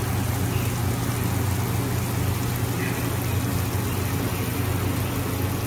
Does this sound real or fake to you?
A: real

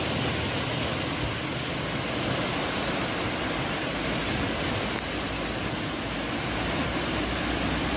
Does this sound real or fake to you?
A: real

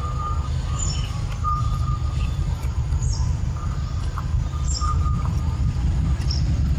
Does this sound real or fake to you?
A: fake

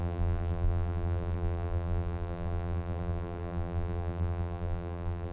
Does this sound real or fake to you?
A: fake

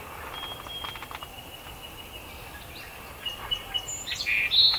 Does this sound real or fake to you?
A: real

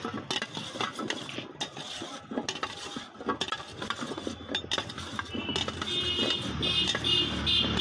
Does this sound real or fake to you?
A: real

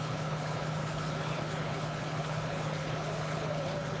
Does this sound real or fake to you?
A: fake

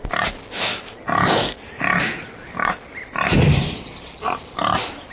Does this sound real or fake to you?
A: real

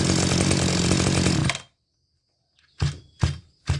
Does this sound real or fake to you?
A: real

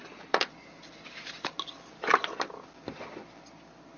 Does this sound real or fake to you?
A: real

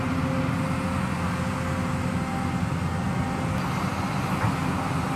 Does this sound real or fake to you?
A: real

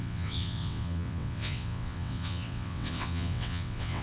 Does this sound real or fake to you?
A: fake